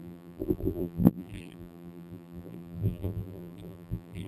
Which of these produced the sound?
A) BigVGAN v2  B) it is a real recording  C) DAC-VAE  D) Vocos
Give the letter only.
A